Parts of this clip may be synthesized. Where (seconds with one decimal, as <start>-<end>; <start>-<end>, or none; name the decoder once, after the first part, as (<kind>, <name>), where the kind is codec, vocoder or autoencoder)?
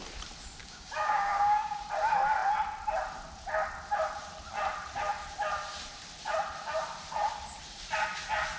0.6-1.8 (codec, DAC)